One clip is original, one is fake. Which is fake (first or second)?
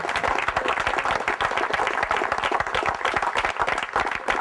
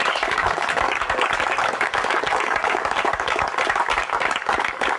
second